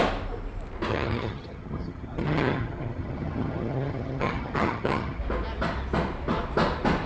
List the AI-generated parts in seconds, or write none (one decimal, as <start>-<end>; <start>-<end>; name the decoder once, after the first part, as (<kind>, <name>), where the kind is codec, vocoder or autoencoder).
0.9-5.2 (vocoder, HiFi-GAN)